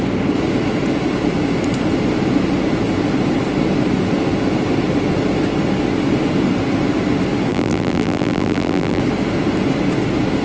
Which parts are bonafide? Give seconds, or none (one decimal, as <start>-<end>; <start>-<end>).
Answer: 0.0-7.5; 9.0-10.4